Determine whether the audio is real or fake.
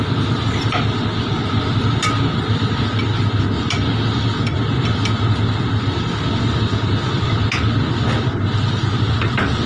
real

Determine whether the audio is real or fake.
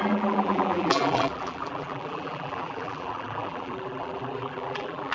fake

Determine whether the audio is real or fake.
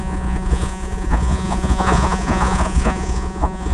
fake